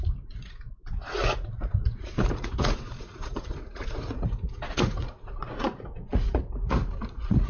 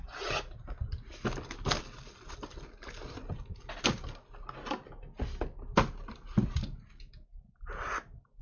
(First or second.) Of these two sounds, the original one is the second